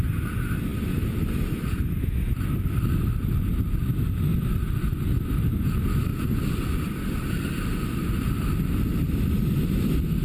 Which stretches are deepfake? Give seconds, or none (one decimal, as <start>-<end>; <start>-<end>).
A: 0.7-3.3; 4.3-5.6